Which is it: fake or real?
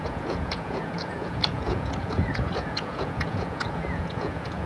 fake